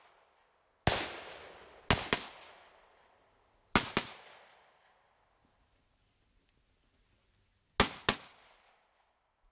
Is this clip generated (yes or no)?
no